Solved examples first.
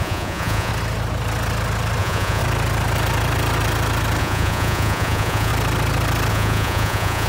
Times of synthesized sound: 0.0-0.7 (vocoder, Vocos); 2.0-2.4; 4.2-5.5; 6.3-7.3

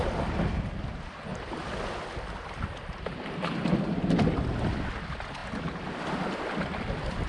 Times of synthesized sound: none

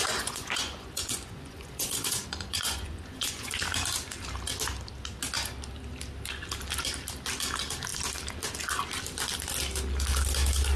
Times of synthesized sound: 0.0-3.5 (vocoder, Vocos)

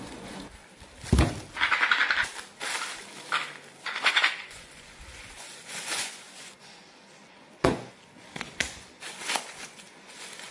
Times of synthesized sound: 0.0-0.6 (vocoder, Vocos); 3.8-10.5